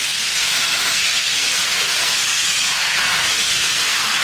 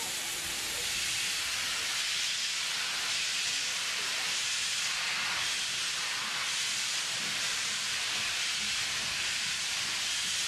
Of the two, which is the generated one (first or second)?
first